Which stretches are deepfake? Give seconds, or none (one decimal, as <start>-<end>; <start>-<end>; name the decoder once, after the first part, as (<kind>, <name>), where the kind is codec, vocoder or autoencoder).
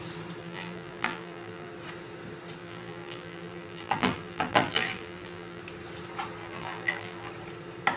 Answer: 0.4-1.7 (vocoder, BigVGAN v2); 2.6-5.6; 6.4-7.3